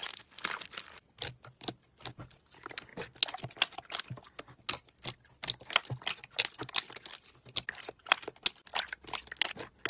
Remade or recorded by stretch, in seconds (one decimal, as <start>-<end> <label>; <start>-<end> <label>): 0.0-9.9 recorded